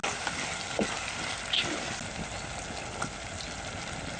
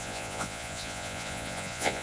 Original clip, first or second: first